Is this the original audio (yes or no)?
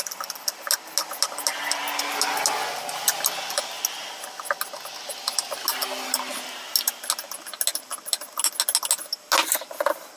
yes